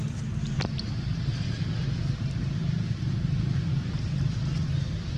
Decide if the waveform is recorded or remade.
remade